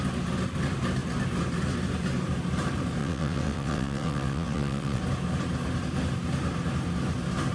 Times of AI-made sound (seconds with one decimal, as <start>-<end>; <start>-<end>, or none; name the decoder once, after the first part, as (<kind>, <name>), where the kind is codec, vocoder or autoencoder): 3.0-5.0 (vocoder, WaveNeXt)